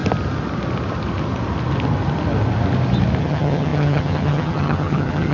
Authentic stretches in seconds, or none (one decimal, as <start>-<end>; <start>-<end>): 0.0-3.2